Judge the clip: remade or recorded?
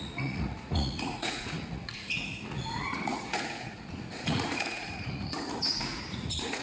remade